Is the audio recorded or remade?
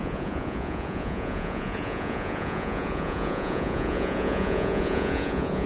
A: remade